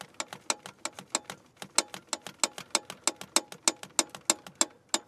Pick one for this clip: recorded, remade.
recorded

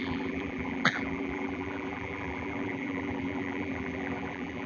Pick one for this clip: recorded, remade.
remade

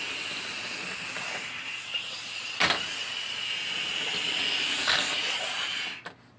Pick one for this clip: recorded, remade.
recorded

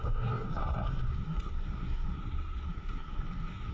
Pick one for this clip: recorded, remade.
remade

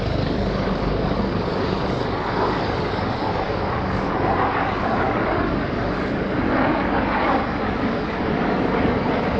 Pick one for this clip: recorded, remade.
remade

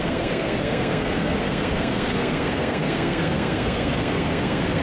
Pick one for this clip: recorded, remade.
remade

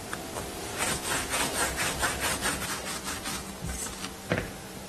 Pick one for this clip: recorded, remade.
recorded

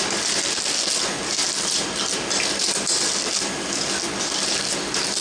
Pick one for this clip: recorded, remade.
recorded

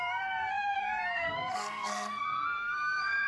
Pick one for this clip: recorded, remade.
remade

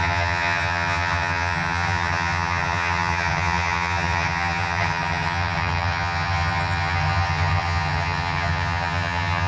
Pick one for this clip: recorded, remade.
remade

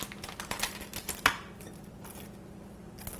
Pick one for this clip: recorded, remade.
recorded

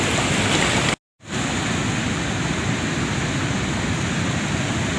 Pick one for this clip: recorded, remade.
recorded